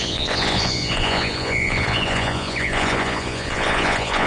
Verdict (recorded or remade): remade